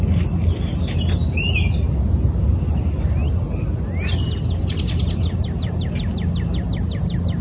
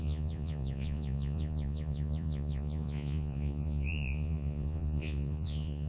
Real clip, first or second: first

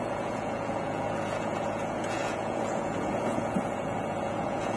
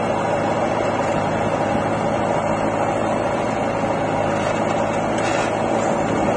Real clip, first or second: second